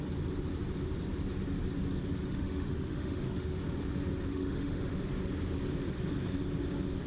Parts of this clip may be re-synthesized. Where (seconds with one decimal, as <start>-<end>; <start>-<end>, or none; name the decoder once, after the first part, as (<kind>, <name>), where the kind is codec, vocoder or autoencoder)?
2.3-3.6 (autoencoder, DAC-VAE); 4.3-4.9